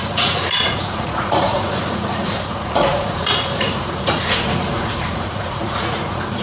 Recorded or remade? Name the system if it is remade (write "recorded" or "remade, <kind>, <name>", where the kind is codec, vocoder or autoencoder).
remade, vocoder, Vocos